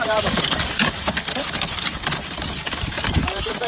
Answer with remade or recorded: remade